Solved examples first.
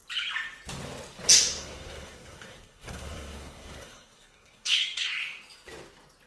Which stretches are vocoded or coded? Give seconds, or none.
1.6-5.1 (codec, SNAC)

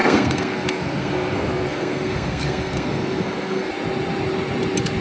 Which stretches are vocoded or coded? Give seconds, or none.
0.0-3.7 (codec, SNAC)

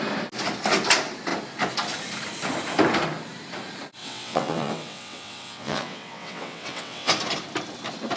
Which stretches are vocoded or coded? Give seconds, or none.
4.0-7.1 (vocoder, WaveNeXt)

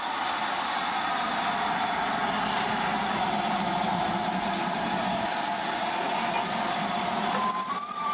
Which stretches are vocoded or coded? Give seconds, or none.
none